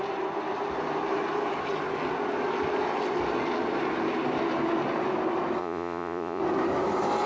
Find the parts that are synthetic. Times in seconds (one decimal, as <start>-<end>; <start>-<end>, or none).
5.6-6.4

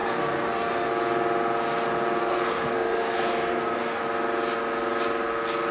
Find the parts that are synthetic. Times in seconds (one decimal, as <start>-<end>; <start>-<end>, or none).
0.0-0.9; 2.2-4.0

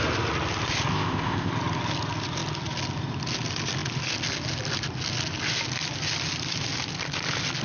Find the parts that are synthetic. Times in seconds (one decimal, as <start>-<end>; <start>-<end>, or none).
0.9-1.5

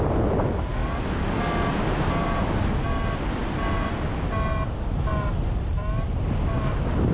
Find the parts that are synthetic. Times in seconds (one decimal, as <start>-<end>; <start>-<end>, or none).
none

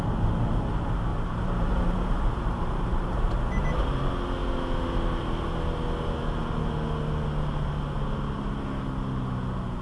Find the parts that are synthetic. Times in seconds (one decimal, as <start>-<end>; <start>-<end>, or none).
1.1-3.4

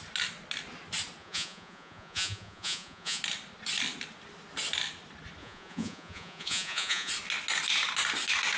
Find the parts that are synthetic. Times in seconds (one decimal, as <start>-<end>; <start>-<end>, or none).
1.2-3.2; 5.4-7.1

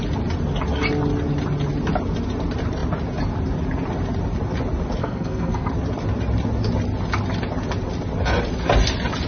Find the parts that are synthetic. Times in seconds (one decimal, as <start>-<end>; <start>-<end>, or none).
5.0-5.7

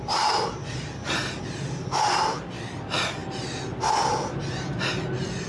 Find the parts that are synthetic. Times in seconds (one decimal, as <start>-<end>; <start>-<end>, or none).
none